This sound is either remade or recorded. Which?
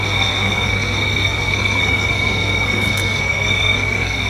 remade